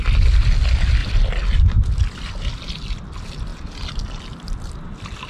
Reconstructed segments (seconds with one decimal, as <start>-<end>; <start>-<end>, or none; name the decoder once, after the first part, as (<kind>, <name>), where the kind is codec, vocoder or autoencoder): 1.0-1.6 (vocoder, BigVGAN v2)

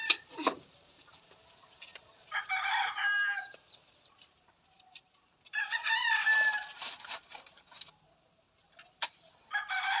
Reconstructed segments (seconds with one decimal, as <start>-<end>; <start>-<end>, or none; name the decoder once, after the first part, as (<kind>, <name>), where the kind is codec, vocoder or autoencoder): 0.0-1.9 (vocoder, BigVGAN v2); 2.4-10.0

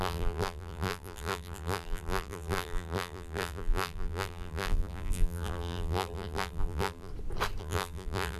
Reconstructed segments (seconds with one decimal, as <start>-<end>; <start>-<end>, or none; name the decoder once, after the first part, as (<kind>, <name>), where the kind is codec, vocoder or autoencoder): 0.0-7.1 (vocoder, BigVGAN v2); 7.6-8.4

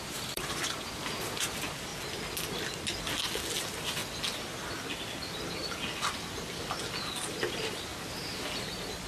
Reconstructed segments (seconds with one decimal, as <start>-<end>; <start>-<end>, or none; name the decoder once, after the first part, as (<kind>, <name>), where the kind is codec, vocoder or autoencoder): 0.0-1.9 (vocoder, BigVGAN v2); 3.6-4.0; 7.2-9.1